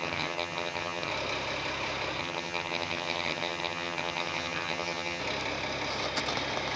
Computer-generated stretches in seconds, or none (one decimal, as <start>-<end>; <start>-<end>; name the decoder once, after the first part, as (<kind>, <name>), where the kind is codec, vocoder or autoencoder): 0.0-1.1 (vocoder, HiFi-GAN); 2.2-5.2